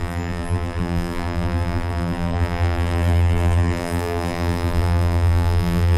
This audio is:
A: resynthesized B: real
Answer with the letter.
A